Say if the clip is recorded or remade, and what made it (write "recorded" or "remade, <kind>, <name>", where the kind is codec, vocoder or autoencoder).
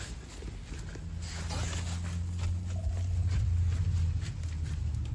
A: recorded